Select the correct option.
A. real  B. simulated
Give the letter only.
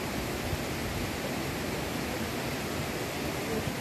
A